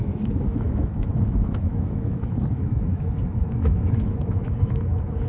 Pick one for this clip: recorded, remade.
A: remade